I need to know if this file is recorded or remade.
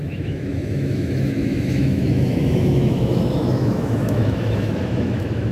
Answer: remade